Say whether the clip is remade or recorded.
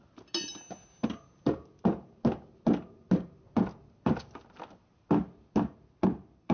recorded